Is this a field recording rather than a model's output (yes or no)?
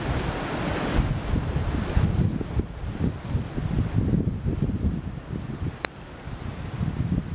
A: yes